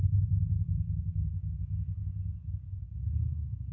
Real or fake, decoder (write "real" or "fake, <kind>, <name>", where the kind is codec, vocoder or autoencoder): fake, codec, DAC